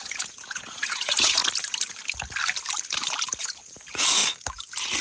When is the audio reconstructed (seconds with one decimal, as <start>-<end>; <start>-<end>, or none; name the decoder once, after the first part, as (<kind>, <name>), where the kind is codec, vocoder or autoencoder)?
0.0-1.4 (vocoder, Vocos); 3.4-4.2

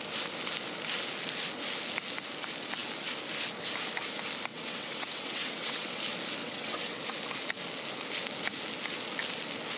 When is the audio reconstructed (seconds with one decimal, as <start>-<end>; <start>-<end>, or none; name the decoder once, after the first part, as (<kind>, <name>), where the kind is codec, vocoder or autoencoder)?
4.5-6.0 (vocoder, WaveNeXt); 6.4-7.0